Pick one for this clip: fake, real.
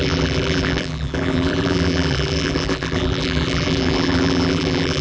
fake